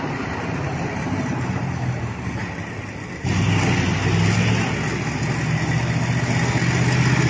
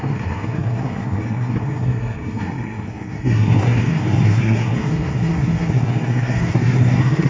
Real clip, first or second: first